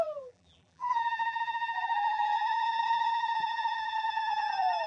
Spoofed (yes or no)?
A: yes